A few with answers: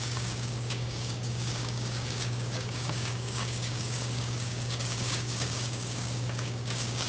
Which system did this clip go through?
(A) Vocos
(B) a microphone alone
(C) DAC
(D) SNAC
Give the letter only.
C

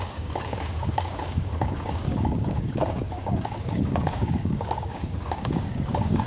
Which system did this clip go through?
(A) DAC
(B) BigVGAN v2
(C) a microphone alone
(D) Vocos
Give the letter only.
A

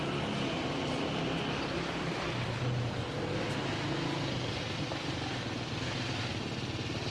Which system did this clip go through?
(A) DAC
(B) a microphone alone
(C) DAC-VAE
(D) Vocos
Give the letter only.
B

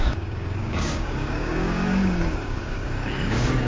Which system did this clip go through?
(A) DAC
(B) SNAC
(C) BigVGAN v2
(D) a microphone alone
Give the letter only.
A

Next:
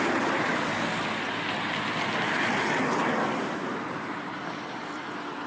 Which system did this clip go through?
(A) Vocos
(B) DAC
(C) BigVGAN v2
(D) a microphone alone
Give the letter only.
D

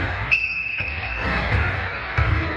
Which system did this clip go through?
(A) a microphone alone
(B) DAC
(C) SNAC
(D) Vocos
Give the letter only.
B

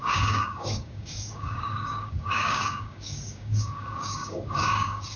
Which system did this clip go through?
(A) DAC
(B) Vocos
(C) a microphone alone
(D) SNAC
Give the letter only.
A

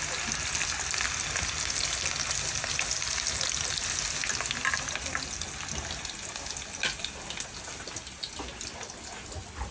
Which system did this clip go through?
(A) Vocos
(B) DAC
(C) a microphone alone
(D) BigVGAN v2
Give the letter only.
C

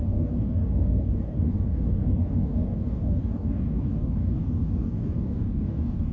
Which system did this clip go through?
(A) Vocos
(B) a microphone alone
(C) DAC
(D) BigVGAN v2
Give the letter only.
C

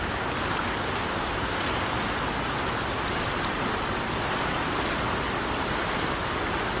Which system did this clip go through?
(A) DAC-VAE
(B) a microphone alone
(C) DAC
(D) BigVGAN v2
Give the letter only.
B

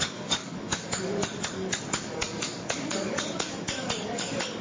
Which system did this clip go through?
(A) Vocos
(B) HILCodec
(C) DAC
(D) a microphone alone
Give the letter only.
C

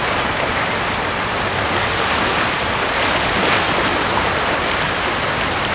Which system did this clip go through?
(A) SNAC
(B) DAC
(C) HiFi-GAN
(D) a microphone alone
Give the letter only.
D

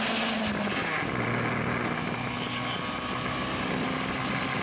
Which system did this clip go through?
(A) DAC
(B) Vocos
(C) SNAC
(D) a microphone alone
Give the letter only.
D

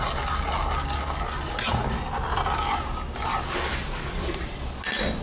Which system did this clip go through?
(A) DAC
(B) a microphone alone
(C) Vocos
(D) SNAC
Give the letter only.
B